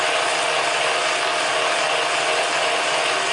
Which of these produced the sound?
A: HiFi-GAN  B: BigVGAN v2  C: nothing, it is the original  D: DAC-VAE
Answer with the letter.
C